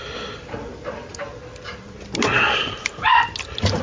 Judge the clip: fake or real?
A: real